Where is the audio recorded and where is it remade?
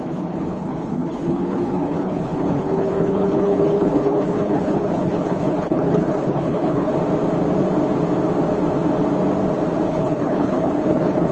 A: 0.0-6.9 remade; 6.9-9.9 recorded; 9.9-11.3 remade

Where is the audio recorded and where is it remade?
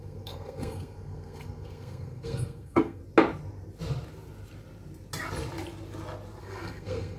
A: 0.0-3.0 remade; 3.0-6.4 recorded; 6.4-7.2 remade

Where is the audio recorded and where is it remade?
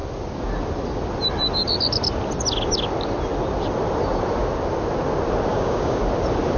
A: 0.0-5.5 recorded; 5.5-6.0 remade; 6.0-6.6 recorded